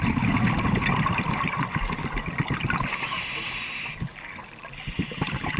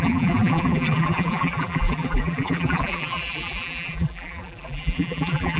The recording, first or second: first